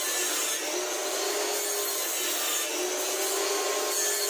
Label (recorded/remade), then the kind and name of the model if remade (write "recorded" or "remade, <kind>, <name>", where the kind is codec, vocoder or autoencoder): recorded